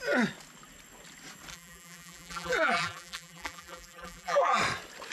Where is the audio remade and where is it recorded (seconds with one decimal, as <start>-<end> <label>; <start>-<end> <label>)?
0.0-1.5 recorded; 1.5-4.6 remade; 4.6-5.1 recorded